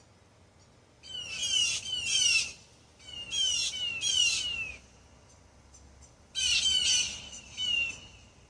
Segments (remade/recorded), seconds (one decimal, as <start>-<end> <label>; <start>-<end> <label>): 0.0-8.5 recorded